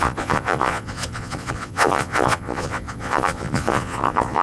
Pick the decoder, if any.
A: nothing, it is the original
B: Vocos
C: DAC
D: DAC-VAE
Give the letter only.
B